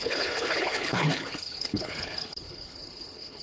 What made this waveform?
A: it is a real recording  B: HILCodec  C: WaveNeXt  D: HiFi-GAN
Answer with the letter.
B